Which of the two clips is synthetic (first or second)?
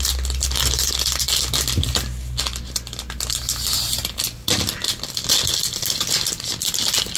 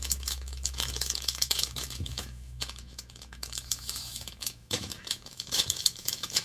second